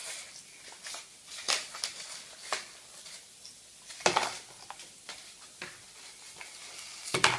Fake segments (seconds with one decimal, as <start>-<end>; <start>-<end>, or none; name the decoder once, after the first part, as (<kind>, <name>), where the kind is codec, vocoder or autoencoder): none